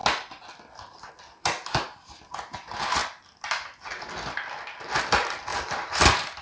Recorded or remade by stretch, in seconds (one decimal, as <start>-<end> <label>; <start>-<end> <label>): 0.0-5.5 recorded; 5.5-6.4 remade

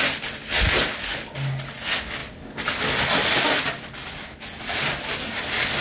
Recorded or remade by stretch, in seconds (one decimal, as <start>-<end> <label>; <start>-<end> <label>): 0.0-5.8 recorded

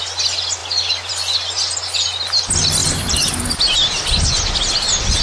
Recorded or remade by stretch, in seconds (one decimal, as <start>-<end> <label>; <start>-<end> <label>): 0.0-5.2 recorded